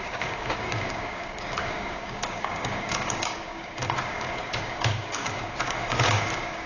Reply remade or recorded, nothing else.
remade